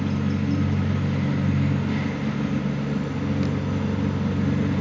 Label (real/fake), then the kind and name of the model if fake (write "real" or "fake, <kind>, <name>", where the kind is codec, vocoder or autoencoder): real